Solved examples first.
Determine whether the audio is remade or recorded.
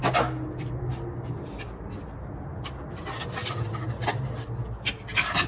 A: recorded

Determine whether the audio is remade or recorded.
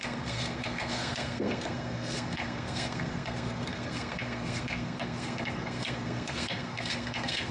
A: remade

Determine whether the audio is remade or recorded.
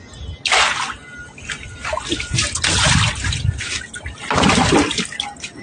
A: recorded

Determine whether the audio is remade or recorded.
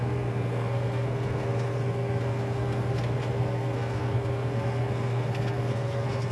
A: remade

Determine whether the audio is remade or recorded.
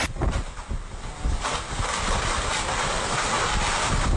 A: recorded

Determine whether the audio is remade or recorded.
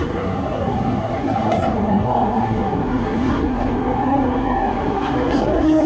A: remade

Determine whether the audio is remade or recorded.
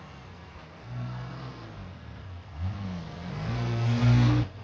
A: remade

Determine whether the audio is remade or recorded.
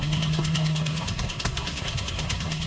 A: remade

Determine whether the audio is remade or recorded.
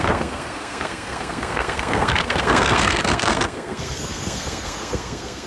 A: remade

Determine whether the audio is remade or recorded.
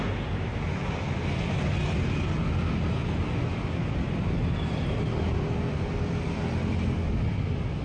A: recorded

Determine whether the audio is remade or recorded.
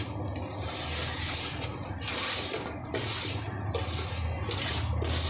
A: recorded